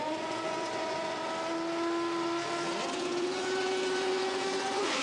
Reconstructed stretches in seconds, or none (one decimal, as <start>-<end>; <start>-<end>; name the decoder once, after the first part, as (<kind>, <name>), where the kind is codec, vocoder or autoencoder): 0.0-1.2 (vocoder, Vocos); 2.9-5.0